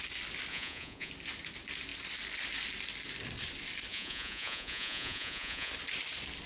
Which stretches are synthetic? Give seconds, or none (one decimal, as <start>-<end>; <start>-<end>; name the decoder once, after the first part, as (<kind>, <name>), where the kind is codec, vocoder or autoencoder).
0.5-1.1 (vocoder, Vocos); 3.9-5.7